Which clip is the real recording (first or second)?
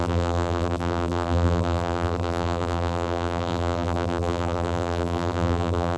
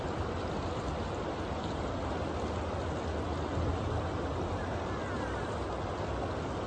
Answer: second